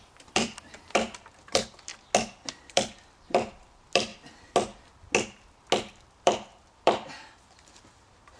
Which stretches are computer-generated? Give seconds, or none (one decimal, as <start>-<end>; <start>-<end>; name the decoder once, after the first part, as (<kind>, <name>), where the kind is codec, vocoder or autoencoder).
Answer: 0.0-1.9 (vocoder, BigVGAN v2); 2.5-4.1; 6.2-8.4